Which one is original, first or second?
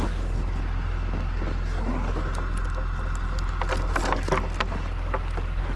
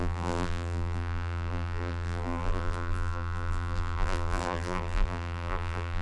first